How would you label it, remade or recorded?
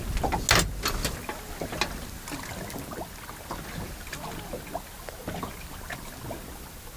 recorded